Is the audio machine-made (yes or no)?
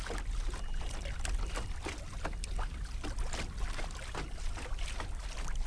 no